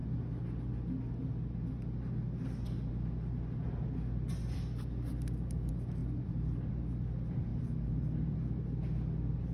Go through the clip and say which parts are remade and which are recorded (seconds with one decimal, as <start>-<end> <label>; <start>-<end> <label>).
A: 0.0-7.5 recorded; 7.5-8.6 remade; 8.6-9.5 recorded